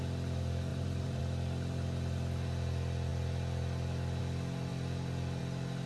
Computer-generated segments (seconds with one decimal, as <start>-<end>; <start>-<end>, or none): 0.7-1.2